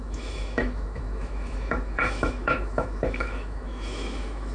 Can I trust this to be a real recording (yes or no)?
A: no